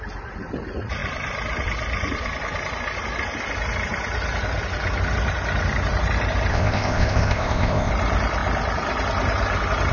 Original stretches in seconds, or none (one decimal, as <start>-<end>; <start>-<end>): 0.0-6.5; 7.9-9.9